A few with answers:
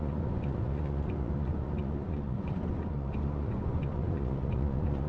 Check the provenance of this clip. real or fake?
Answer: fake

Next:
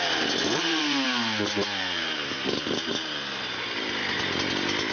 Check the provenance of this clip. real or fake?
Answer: fake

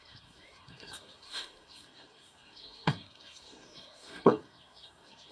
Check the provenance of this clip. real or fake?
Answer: fake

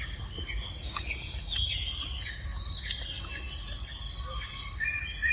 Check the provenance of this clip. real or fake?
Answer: real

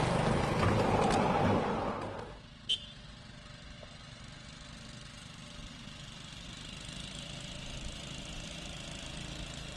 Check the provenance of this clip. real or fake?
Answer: real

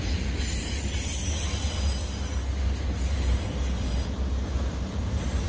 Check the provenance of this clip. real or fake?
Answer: real